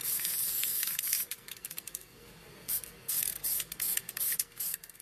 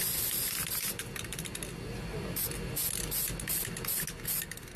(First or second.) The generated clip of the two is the first